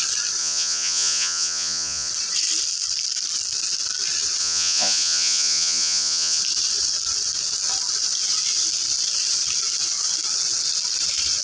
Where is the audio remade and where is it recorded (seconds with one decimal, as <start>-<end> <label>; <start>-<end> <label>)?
0.0-0.4 recorded; 0.4-2.1 remade; 2.1-4.4 recorded; 4.4-6.4 remade; 6.4-11.4 recorded